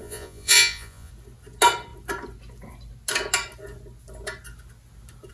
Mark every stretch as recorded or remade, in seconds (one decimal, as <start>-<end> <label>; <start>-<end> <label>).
0.0-1.1 remade; 1.1-5.3 recorded